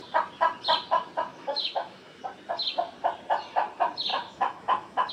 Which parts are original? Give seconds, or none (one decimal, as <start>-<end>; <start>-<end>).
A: 0.0-1.3; 2.2-4.1